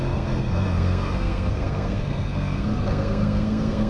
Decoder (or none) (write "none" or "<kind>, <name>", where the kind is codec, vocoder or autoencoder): codec, SNAC